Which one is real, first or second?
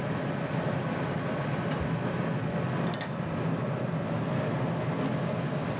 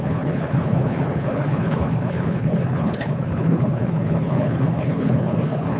first